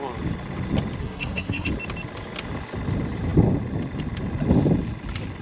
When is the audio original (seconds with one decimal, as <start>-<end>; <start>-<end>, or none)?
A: 0.0-1.0; 1.7-5.4